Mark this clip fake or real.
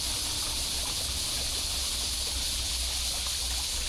real